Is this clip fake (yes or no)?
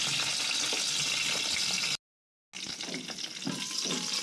no